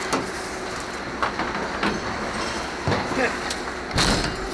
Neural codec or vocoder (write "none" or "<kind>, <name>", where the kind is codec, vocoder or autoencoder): none